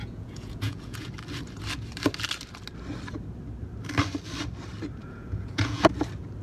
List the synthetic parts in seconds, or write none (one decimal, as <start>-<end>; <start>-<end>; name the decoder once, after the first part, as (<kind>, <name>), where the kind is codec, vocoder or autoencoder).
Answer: 0.0-1.1 (vocoder, Vocos); 5.0-5.8